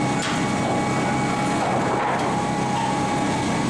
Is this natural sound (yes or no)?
yes